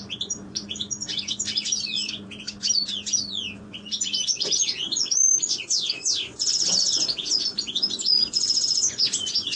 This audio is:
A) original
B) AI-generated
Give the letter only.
B